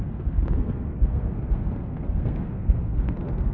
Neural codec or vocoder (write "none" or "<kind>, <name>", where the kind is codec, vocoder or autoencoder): codec, SNAC